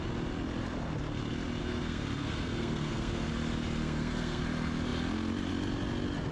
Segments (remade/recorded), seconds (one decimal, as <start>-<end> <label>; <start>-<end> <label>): 0.0-1.6 recorded; 1.6-3.3 remade; 3.3-3.8 recorded; 3.8-4.4 remade; 4.4-6.3 recorded